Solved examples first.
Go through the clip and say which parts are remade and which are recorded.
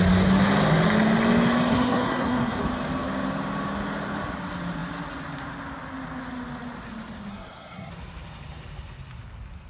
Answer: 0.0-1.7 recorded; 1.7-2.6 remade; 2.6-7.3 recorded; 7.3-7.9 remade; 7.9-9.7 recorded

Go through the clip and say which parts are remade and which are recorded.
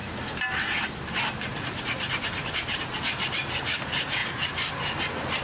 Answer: 0.0-5.4 recorded